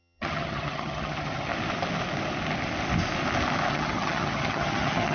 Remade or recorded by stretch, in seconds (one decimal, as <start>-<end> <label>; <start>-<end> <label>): 0.0-1.5 remade; 1.5-3.7 recorded; 3.7-5.1 remade